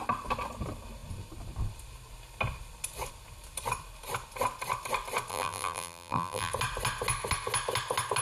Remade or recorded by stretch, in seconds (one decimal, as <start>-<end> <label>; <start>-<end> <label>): 0.0-5.3 recorded; 5.3-6.5 remade; 6.5-8.2 recorded